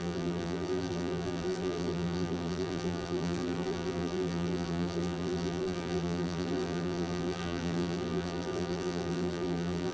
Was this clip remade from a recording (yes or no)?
yes